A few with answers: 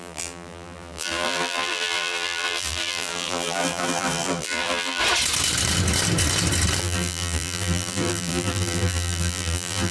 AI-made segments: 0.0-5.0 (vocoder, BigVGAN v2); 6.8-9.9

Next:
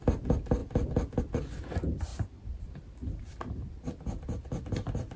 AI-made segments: none